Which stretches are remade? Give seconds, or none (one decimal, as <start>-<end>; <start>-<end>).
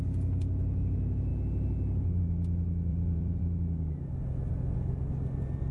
2.9-3.4